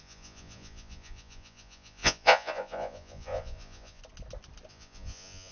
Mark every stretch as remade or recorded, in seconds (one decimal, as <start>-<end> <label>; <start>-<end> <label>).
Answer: 0.0-4.0 remade; 4.0-4.7 recorded; 4.7-5.5 remade